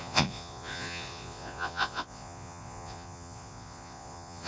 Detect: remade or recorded remade